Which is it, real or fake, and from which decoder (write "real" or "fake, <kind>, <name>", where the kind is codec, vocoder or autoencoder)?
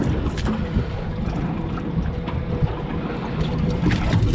real